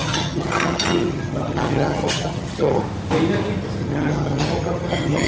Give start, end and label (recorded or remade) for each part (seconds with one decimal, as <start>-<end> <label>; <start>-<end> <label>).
0.0-2.8 remade; 2.8-3.8 recorded; 3.8-5.3 remade